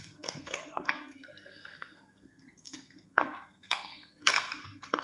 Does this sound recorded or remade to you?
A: remade